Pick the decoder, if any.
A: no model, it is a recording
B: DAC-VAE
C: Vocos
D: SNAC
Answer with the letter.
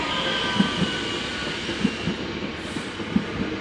A